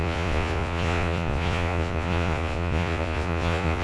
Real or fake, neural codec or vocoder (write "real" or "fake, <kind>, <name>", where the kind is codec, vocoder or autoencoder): fake, vocoder, Vocos